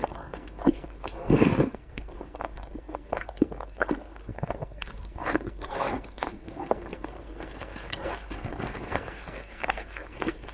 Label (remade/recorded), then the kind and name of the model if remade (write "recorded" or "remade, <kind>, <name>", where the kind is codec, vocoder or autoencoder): remade, codec, SNAC